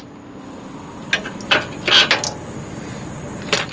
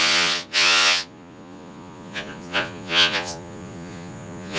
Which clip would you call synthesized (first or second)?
second